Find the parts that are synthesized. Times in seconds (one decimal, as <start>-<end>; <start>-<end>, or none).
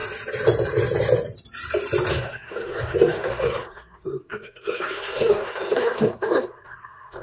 2.1-7.2